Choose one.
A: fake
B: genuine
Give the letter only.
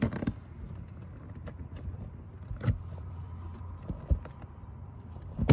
A